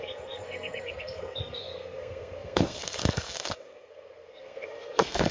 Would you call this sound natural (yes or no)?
no